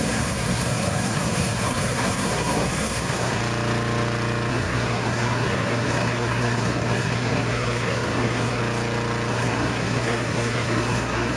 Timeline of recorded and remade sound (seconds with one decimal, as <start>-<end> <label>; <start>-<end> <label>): 0.0-3.4 remade; 3.4-4.5 recorded; 4.5-8.6 remade; 8.6-9.3 recorded; 9.3-11.4 remade